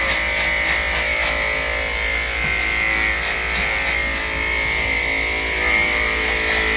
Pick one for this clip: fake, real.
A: real